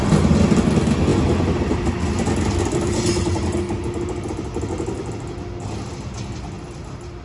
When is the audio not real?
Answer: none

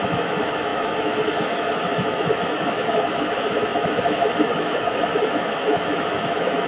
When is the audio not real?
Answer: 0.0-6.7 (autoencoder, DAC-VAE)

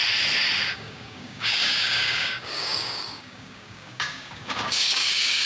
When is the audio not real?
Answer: 0.7-5.5 (codec, DAC)

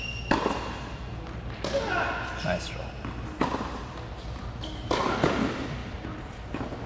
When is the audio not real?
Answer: none